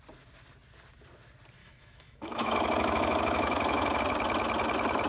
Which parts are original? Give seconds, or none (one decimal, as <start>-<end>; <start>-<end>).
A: 0.0-1.6; 4.0-5.1